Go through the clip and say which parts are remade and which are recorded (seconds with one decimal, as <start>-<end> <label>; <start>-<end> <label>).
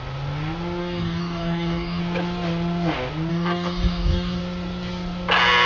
0.0-0.8 recorded; 0.8-2.0 remade; 2.0-3.3 recorded; 3.3-4.4 remade; 4.4-5.7 recorded